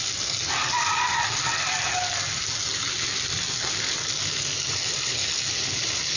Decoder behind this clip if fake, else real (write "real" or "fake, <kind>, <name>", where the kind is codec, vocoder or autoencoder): real